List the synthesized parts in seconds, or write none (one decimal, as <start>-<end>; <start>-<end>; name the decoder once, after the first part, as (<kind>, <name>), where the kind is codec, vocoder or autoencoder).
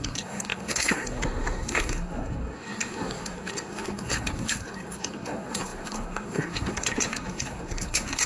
0.0-8.3 (codec, SNAC)